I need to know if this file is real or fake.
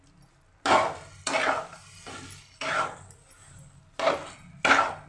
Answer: real